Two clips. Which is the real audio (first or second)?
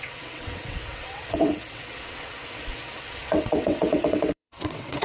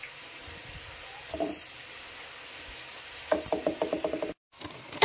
second